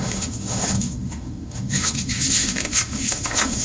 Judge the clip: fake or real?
fake